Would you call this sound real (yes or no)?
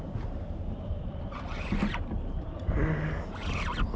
yes